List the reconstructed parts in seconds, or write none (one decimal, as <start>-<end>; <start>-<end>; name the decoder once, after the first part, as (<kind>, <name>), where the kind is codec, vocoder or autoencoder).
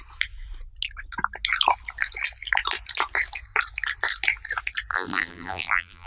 4.9-6.1 (vocoder, BigVGAN v2)